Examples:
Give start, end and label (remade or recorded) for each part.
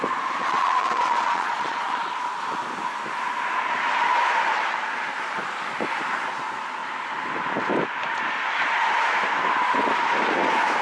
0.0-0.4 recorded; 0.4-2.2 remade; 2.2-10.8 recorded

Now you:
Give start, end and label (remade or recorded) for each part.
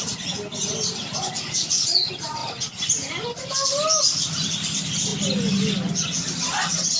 0.0-7.0 recorded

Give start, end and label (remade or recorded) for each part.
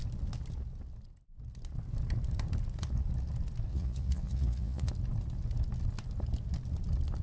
0.0-3.7 recorded; 3.7-4.9 remade; 4.9-7.2 recorded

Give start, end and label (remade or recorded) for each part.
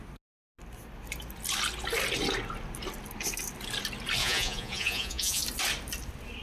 0.0-4.2 recorded; 4.2-5.4 remade; 5.4-6.4 recorded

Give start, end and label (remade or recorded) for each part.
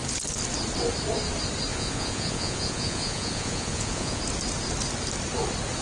0.0-1.7 recorded; 1.7-4.2 remade; 4.2-5.8 recorded